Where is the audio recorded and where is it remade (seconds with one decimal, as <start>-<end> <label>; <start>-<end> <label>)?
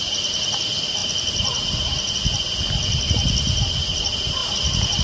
0.0-5.0 recorded